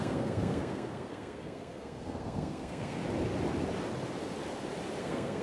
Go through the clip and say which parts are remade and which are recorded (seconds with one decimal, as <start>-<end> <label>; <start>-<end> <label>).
0.0-3.0 remade; 3.0-5.0 recorded; 5.0-5.4 remade